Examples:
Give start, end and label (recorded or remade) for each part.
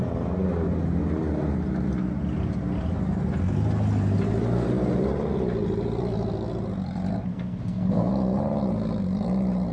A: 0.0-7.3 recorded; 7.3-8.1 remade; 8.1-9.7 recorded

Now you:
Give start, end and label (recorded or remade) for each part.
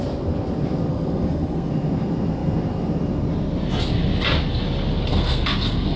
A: 0.0-0.9 recorded; 0.9-1.7 remade; 1.7-5.1 recorded; 5.1-6.0 remade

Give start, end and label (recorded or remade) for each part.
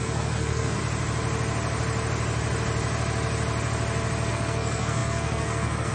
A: 0.0-0.8 remade; 0.8-4.3 recorded; 4.3-5.9 remade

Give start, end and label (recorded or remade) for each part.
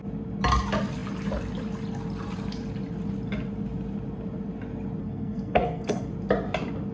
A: 0.0-5.0 recorded; 5.0-6.1 remade; 6.1-6.9 recorded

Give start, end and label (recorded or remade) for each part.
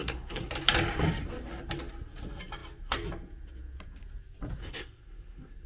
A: 0.0-0.5 remade; 0.5-4.6 recorded; 4.6-5.7 remade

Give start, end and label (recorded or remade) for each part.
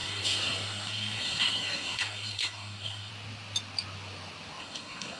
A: 0.0-3.1 remade; 3.1-4.6 recorded; 4.6-5.2 remade